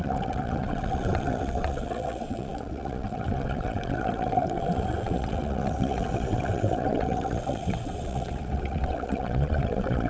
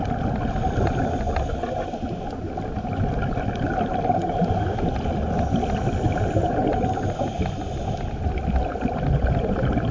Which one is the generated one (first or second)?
first